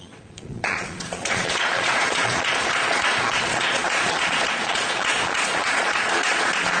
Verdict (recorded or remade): remade